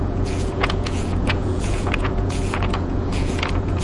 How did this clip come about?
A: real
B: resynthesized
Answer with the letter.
B